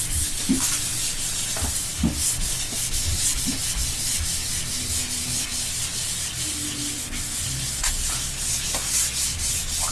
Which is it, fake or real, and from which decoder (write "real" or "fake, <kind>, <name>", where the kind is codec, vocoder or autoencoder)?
real